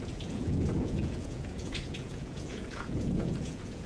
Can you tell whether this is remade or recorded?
remade